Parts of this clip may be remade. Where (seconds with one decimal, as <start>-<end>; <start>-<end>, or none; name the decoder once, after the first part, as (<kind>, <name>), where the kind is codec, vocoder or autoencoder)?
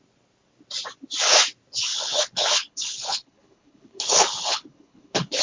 1.9-5.4 (codec, HILCodec)